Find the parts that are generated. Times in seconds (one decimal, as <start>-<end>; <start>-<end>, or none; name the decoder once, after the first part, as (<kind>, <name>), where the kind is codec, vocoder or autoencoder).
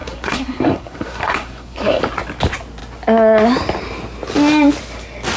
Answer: 0.0-2.0 (codec, SNAC)